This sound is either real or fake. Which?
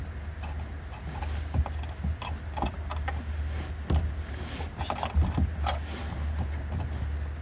real